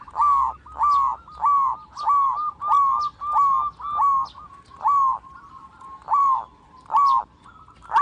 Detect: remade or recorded recorded